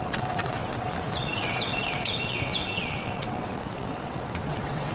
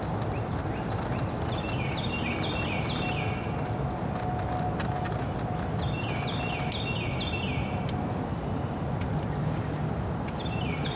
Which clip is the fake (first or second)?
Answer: first